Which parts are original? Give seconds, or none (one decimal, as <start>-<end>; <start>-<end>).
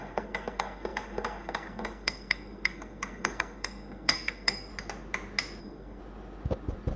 4.7-5.6; 6.0-7.0